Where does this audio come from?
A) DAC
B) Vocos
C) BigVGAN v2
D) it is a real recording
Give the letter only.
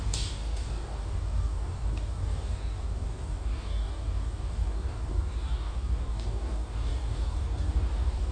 A